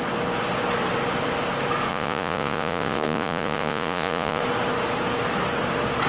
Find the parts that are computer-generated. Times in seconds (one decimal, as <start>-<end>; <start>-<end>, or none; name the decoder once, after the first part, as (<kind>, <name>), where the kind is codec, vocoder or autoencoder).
1.9-4.4 (vocoder, Vocos)